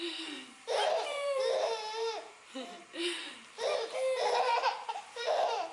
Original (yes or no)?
no